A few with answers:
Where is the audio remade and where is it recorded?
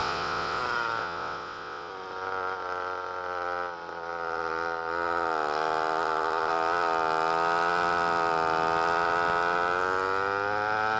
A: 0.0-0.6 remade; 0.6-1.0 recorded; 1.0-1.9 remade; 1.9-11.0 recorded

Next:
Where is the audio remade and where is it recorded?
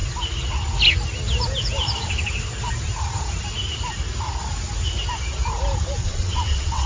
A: 0.0-6.0 recorded; 6.0-6.9 remade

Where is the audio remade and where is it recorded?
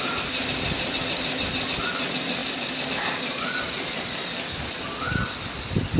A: 0.0-6.0 recorded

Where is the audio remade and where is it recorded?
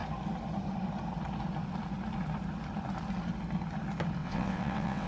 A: 0.0-4.2 recorded; 4.2-5.1 remade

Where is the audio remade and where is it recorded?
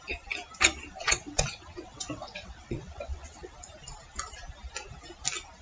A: 0.0-1.0 recorded; 1.0-3.5 remade; 3.5-5.6 recorded